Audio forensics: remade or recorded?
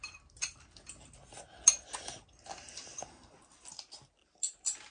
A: recorded